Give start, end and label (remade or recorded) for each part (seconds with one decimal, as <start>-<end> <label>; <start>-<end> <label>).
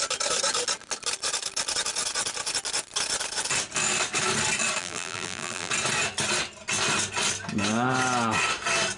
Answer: 0.0-4.8 recorded; 4.8-5.7 remade; 5.7-9.0 recorded